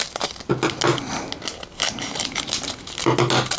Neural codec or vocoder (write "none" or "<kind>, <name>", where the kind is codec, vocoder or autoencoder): none